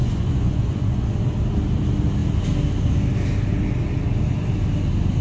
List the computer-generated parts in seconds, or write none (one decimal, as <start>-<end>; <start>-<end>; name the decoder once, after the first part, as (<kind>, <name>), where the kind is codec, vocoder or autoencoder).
0.0-1.1 (vocoder, Vocos)